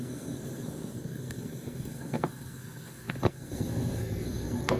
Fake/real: fake